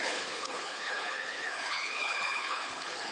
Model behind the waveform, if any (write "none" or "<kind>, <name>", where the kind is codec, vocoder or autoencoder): codec, HILCodec